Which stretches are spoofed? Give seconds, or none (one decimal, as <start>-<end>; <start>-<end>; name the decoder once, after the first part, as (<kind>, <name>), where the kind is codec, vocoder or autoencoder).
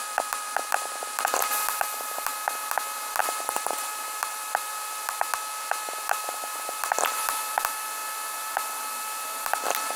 0.0-2.3 (vocoder, BigVGAN v2); 3.2-5.3; 6.0-10.0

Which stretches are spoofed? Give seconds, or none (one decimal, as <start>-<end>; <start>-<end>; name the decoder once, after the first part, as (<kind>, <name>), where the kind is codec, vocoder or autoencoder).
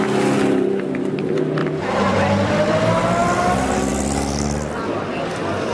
1.6-2.5 (vocoder, BigVGAN v2)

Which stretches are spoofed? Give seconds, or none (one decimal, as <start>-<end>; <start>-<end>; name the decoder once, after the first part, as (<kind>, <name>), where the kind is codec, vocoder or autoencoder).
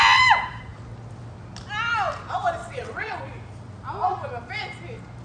2.6-3.2 (vocoder, WaveNeXt)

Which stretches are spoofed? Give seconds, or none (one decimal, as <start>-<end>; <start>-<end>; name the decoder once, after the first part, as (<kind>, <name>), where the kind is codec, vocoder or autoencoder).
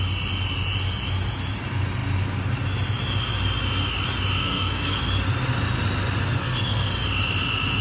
4.4-5.0 (codec, SNAC); 6.4-6.9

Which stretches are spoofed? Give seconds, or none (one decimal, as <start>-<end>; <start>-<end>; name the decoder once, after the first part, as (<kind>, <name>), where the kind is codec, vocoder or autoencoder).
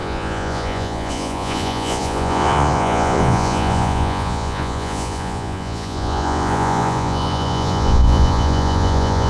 0.0-9.3 (vocoder, Vocos)